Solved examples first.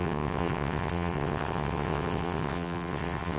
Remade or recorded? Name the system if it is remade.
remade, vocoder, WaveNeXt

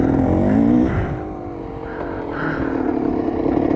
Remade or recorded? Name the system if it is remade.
recorded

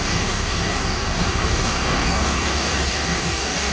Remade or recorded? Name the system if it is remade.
remade, codec, DAC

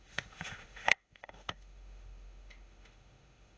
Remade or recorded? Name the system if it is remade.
remade, autoencoder, DAC-VAE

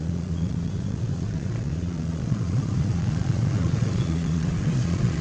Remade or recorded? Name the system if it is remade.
remade, vocoder, Vocos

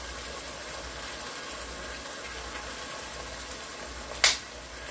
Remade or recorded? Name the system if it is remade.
recorded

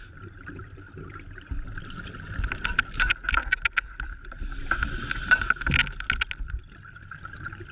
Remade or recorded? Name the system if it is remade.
recorded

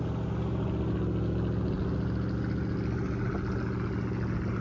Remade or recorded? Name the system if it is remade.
recorded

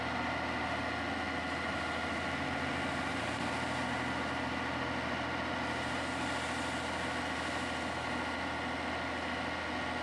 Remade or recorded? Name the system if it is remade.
recorded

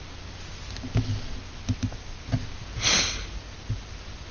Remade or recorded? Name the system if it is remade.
recorded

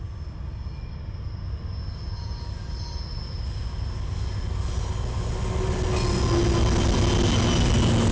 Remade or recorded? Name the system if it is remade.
recorded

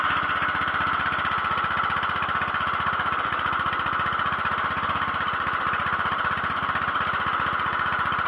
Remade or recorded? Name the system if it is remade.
recorded